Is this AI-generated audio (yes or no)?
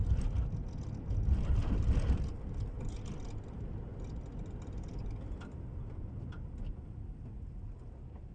no